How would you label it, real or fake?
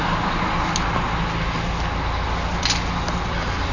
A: real